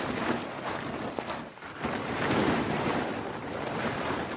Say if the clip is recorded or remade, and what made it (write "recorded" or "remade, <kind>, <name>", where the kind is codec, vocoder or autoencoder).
remade, vocoder, BigVGAN v2